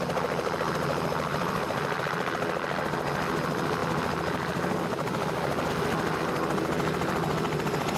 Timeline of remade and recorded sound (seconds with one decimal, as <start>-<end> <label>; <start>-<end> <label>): 0.0-0.9 recorded; 0.9-2.1 remade; 2.1-3.8 recorded; 3.8-5.7 remade; 5.7-8.0 recorded